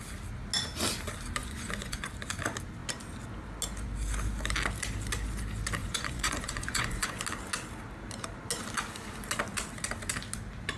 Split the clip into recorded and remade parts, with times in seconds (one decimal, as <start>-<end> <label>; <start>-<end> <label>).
0.0-1.4 recorded; 1.4-2.1 remade; 2.1-5.8 recorded; 5.8-7.2 remade; 7.2-10.8 recorded